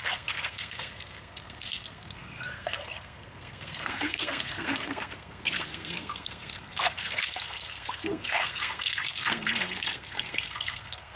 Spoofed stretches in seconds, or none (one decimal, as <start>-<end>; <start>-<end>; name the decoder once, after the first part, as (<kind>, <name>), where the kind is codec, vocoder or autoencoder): 0.0-11.2 (codec, SNAC)